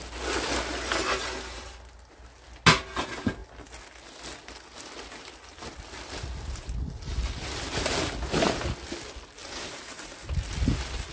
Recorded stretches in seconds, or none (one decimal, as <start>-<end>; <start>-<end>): 0.0-9.4; 10.7-11.1